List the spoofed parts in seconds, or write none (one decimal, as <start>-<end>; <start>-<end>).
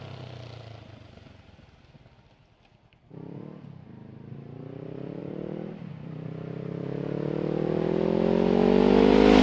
5.2-5.9